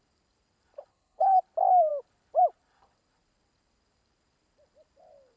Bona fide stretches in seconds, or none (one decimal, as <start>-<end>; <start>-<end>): 0.0-0.9; 1.4-5.4